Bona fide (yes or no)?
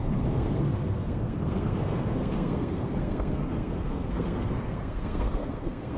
no